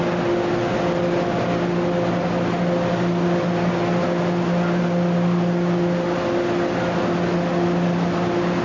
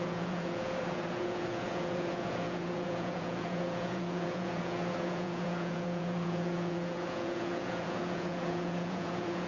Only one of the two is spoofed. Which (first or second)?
second